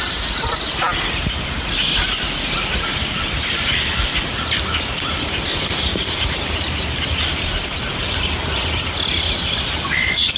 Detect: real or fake real